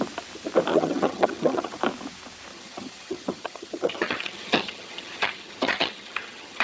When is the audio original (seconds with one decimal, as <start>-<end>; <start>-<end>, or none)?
0.0-0.7; 1.8-2.5